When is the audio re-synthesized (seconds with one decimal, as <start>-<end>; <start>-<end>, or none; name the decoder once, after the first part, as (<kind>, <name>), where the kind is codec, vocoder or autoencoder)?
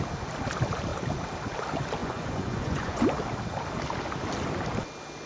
2.0-3.0 (vocoder, Vocos)